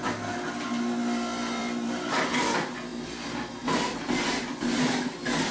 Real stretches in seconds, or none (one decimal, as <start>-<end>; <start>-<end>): 0.0-1.6; 2.2-5.5